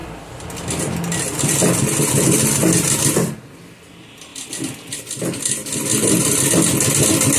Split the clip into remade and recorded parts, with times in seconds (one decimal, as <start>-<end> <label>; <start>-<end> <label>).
0.0-2.4 remade; 2.4-5.6 recorded; 5.6-6.4 remade; 6.4-7.4 recorded